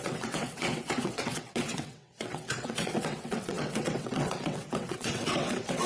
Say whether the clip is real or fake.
fake